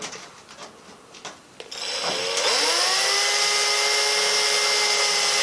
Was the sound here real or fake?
real